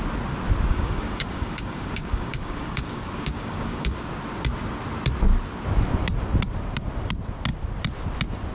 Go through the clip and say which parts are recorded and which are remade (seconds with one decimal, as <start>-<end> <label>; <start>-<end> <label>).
0.0-0.7 recorded; 0.7-4.0 remade; 4.0-8.5 recorded